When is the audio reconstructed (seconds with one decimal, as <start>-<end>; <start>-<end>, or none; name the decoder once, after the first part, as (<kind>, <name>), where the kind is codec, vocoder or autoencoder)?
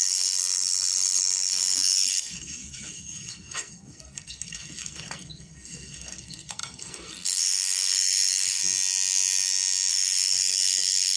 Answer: 0.0-8.6 (codec, SNAC); 9.9-11.2